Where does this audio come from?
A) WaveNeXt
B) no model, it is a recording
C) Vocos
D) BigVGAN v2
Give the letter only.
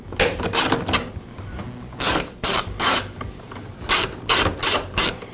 B